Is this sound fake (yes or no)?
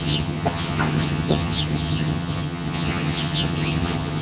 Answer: yes